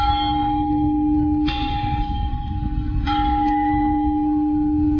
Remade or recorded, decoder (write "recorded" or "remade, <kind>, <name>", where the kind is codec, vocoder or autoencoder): remade, codec, SNAC